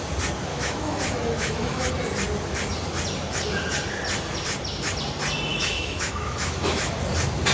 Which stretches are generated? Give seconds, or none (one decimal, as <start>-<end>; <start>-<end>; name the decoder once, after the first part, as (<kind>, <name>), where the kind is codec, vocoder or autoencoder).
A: 0.5-1.9 (autoencoder, DAC-VAE); 5.5-6.9